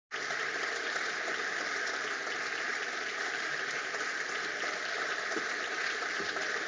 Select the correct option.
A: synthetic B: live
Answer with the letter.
B